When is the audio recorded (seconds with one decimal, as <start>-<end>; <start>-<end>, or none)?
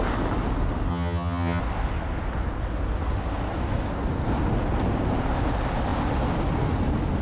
0.0-0.9; 1.6-7.2